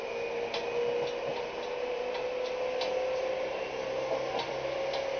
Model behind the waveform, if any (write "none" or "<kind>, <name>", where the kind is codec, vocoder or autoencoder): none